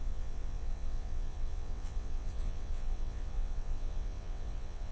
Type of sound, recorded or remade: remade